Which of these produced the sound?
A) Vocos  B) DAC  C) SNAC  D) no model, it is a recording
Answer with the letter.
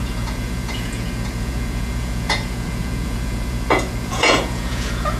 A